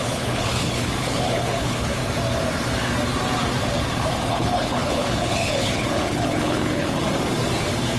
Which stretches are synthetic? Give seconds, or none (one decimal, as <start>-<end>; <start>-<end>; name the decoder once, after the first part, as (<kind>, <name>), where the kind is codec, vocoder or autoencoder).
0.0-2.0 (codec, HILCodec); 4.3-7.0